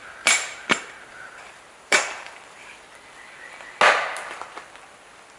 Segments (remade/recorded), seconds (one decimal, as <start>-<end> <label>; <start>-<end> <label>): 0.0-2.6 remade; 2.6-5.4 recorded